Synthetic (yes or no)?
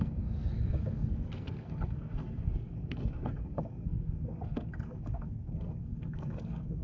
yes